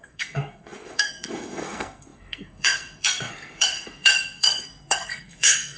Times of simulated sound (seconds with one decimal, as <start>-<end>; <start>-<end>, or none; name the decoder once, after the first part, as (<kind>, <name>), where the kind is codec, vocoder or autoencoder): 0.0-5.8 (codec, SNAC)

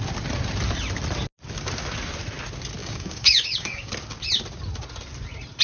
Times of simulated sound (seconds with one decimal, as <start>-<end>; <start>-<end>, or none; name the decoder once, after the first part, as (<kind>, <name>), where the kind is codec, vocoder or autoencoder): 2.8-3.9 (codec, DAC)

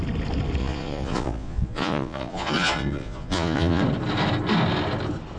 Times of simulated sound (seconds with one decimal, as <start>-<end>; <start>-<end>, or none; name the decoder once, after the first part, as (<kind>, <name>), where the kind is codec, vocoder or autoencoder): 0.6-3.8 (vocoder, Vocos)